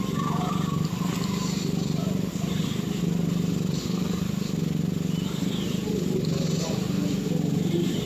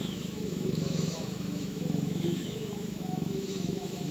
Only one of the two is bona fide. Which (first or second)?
first